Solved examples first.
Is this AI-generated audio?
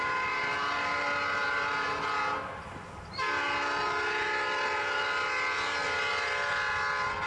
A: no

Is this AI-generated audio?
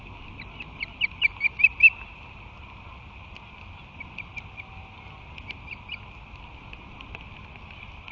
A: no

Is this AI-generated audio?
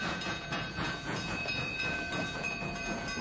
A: yes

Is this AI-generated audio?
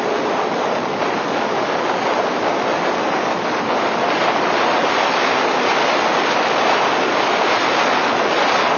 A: no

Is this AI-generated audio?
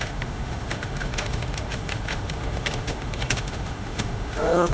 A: yes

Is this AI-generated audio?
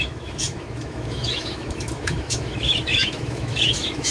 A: yes